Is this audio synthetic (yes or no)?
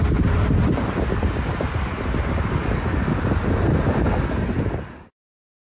no